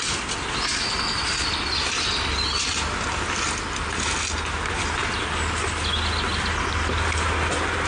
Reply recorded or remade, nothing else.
recorded